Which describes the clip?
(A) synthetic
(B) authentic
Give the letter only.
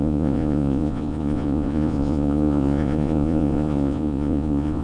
A